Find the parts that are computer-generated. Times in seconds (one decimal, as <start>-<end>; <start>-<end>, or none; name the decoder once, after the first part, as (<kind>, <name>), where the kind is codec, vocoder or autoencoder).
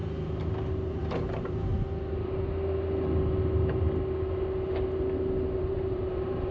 1.0-1.7 (vocoder, BigVGAN v2); 5.6-6.5